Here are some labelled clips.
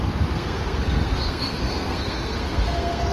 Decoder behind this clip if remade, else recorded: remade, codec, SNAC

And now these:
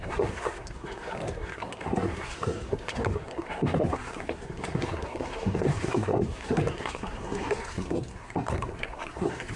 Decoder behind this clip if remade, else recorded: remade, codec, SNAC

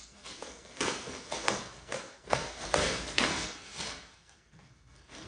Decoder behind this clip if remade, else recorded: remade, codec, SNAC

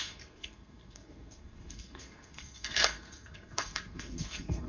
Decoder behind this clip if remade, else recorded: remade, codec, SNAC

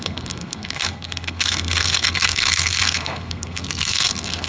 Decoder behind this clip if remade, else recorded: remade, codec, SNAC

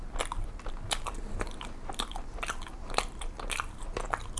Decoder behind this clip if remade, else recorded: recorded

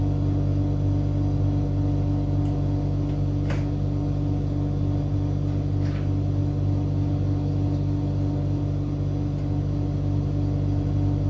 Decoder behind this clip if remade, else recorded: recorded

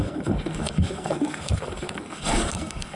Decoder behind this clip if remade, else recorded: remade, codec, SNAC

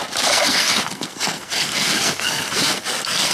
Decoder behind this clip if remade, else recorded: remade, codec, SNAC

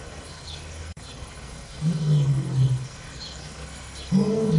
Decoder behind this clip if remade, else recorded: remade, codec, SNAC